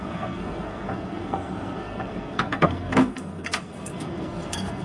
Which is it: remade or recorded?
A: remade